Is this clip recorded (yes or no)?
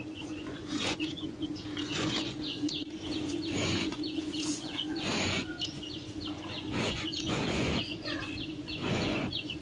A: no